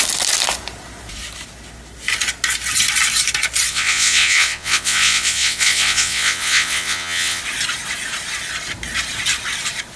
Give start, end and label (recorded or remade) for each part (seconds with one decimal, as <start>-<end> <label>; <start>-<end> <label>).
0.0-3.7 recorded; 3.7-7.4 remade; 7.4-10.0 recorded